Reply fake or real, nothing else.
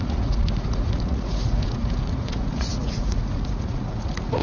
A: fake